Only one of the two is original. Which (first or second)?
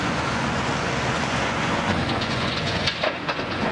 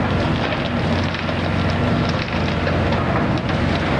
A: second